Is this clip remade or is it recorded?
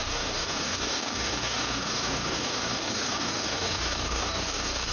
remade